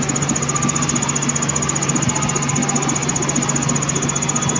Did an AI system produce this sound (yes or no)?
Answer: no